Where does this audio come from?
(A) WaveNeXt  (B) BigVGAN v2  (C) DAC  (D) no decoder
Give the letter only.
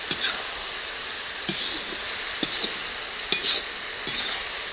D